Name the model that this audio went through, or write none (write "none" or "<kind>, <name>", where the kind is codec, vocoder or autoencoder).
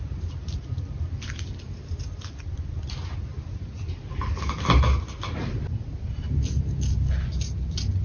none